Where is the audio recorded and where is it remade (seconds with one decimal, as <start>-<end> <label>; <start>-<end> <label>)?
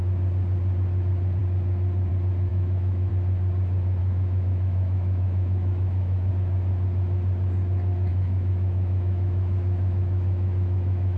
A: 0.0-2.5 recorded; 2.5-3.1 remade; 3.1-4.0 recorded; 4.0-6.3 remade; 6.3-8.1 recorded; 8.1-11.2 remade